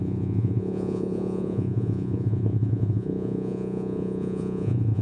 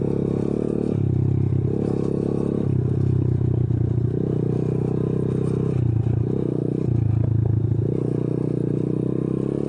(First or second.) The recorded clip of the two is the second